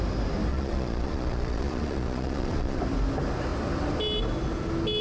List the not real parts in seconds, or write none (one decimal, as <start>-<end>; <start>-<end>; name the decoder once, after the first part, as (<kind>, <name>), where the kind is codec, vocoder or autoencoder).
0.5-2.8 (vocoder, Vocos)